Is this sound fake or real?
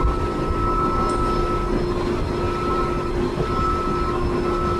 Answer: real